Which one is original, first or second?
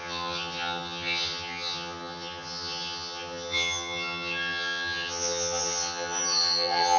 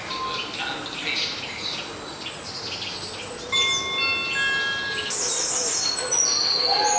second